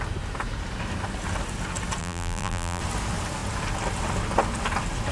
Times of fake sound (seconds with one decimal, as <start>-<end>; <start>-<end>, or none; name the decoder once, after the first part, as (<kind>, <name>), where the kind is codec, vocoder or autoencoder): 2.0-2.8 (vocoder, BigVGAN v2)